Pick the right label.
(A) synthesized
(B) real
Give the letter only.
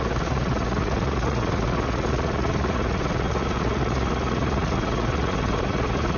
A